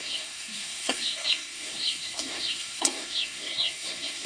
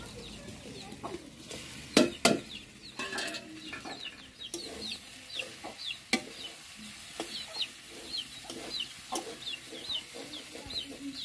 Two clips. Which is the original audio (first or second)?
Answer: second